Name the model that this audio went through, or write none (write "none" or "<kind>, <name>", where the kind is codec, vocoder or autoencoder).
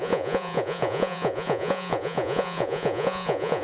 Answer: vocoder, Vocos